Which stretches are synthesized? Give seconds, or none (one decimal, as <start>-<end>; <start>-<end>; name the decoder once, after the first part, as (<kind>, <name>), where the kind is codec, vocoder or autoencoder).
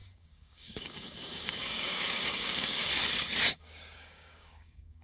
0.0-2.9 (codec, DAC); 3.5-5.0